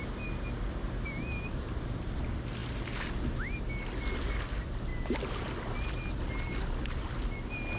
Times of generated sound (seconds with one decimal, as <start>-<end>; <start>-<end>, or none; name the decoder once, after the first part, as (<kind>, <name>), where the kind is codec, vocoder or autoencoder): none